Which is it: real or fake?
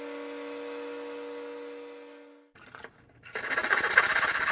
real